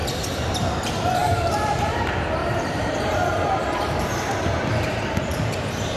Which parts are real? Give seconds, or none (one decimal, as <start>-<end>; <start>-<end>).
0.0-1.2; 2.0-2.4; 5.2-6.0